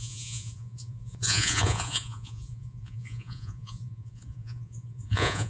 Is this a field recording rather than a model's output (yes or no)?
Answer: no